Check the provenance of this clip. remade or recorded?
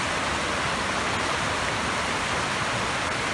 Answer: recorded